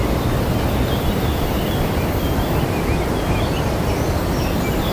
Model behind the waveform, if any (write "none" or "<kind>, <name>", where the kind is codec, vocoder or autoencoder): none